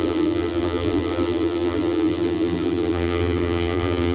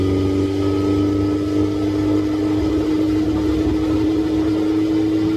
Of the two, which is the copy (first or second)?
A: first